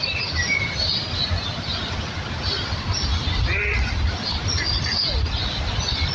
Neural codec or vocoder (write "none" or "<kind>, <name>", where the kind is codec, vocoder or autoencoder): none